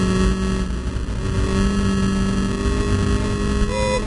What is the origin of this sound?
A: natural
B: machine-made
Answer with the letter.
A